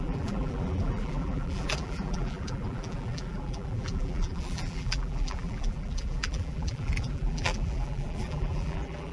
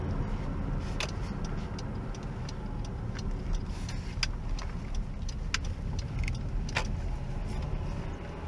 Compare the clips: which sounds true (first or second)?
second